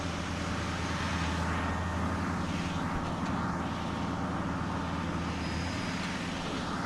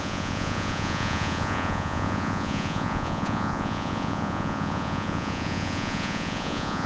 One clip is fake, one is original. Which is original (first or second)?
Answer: first